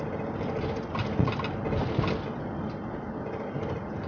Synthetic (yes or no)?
no